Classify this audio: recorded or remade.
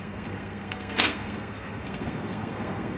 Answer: remade